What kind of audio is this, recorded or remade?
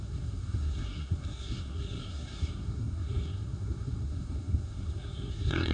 remade